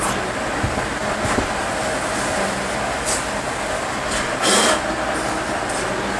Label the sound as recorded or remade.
recorded